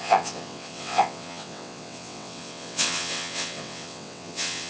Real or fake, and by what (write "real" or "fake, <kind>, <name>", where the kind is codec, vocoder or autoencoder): fake, vocoder, WaveNeXt